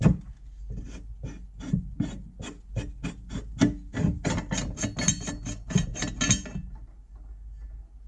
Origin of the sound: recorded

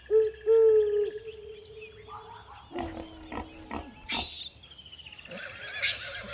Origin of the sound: recorded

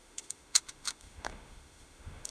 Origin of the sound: remade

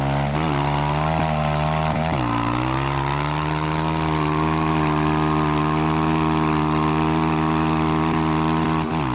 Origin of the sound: recorded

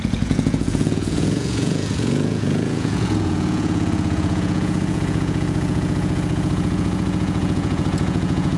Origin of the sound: remade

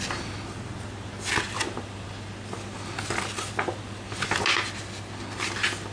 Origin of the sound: recorded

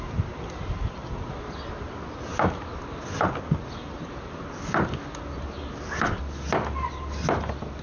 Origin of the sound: recorded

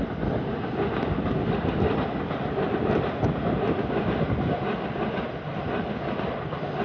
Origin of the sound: recorded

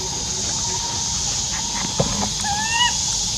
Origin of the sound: recorded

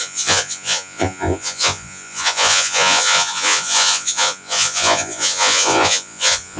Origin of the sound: remade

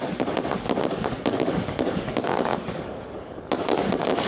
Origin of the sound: remade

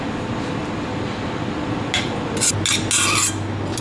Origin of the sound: recorded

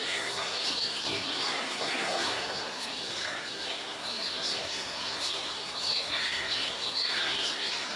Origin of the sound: remade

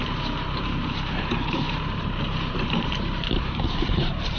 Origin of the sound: remade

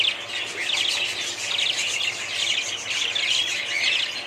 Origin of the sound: recorded